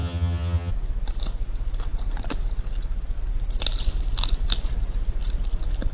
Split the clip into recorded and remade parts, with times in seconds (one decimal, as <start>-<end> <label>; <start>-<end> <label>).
0.0-0.7 remade; 0.7-5.9 recorded